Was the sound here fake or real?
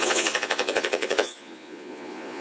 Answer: fake